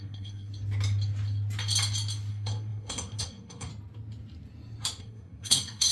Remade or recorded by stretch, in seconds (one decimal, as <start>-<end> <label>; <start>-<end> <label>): 0.0-0.5 remade; 0.5-2.3 recorded; 2.3-3.7 remade; 3.7-5.0 recorded; 5.0-5.9 remade